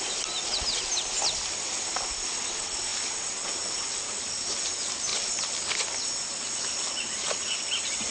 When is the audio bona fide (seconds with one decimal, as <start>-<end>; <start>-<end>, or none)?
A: 0.0-8.1